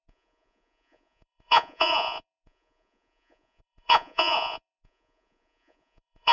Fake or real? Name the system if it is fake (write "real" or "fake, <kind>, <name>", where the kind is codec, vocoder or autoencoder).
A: fake, vocoder, Vocos